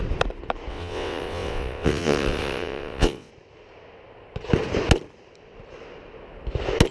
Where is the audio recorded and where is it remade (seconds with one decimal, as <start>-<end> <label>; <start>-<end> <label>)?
0.0-0.7 recorded; 0.7-3.3 remade; 3.3-6.9 recorded